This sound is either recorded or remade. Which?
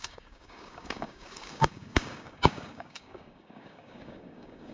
remade